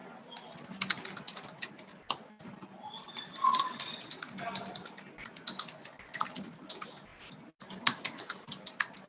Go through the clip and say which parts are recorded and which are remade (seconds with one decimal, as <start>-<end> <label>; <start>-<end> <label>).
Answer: 0.0-7.1 recorded; 7.1-8.2 remade; 8.2-9.1 recorded